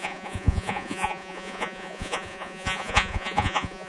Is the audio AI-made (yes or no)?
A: yes